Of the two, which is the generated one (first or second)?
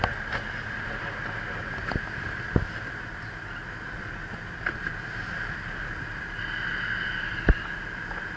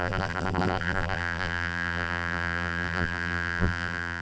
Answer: second